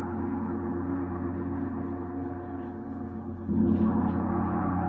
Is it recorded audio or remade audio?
remade